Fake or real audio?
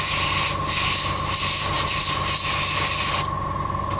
real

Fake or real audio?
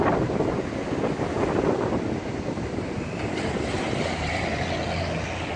real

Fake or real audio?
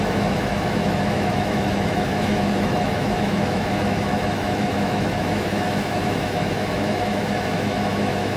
fake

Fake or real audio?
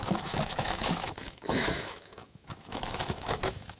fake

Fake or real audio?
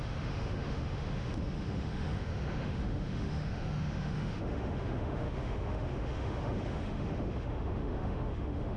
fake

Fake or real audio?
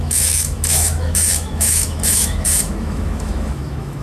fake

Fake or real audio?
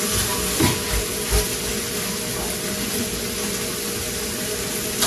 real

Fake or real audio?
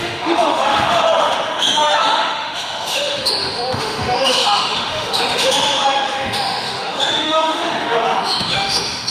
fake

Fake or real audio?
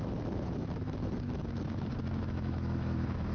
fake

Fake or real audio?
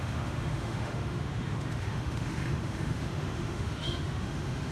fake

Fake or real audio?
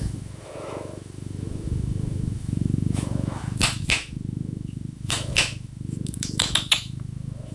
fake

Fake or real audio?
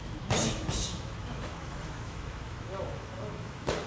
fake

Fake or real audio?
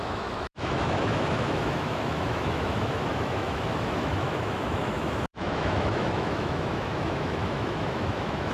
fake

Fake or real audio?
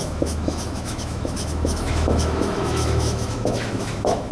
fake